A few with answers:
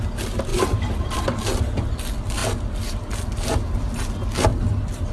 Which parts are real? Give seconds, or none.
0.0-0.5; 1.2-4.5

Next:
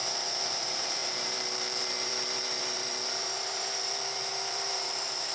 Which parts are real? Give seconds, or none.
none

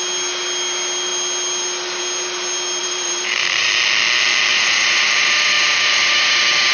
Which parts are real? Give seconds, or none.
0.0-2.8; 3.7-4.5; 6.1-6.7

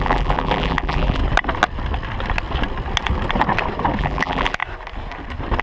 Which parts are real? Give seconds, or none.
1.2-4.0; 4.6-5.6

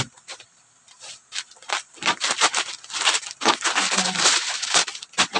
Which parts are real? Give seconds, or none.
0.0-1.2; 2.2-5.4

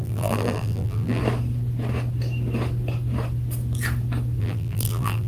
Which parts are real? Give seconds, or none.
1.2-4.4

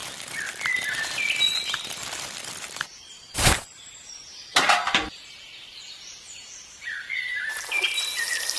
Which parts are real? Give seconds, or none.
0.0-2.6